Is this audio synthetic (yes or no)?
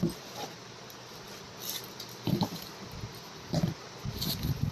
no